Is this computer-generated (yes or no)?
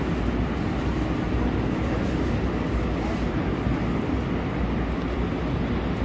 no